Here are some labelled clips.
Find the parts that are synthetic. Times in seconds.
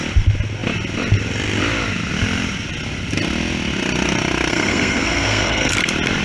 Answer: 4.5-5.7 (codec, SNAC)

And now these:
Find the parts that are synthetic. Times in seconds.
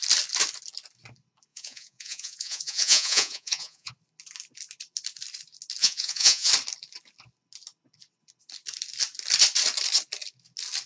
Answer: 1.5-3.9 (vocoder, Vocos); 5.8-6.5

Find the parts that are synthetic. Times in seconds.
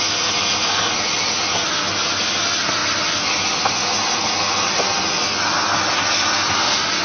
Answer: none